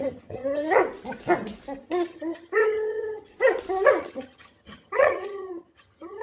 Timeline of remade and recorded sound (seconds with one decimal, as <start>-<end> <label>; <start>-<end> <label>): 0.0-0.8 remade; 0.8-1.8 recorded; 1.8-3.3 remade; 3.3-4.0 recorded; 4.0-6.2 remade